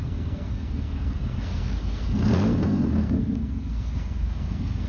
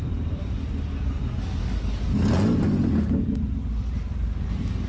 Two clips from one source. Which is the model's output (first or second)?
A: first